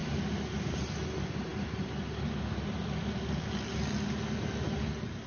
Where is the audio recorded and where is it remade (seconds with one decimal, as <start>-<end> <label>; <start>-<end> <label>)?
0.0-0.9 remade; 0.9-5.3 recorded